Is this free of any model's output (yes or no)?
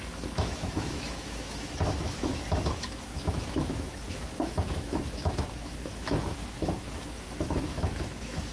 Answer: no